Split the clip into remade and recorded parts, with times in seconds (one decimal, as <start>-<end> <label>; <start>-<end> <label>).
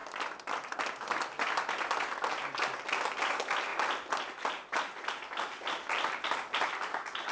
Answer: 0.0-7.3 recorded